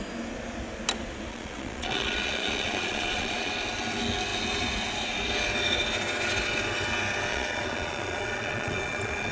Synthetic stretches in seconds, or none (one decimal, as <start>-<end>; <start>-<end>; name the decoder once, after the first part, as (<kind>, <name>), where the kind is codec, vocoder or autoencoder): 1.3-3.5 (vocoder, Vocos); 7.3-9.3